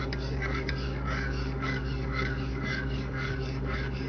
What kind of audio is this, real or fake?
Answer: fake